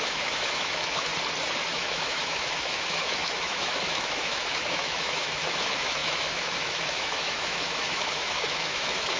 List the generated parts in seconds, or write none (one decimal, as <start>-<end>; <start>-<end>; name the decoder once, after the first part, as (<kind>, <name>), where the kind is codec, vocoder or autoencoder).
0.0-1.1 (autoencoder, DAC-VAE); 1.7-9.2